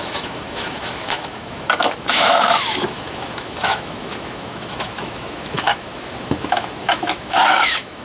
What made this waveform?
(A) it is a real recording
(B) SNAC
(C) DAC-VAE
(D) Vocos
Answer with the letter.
C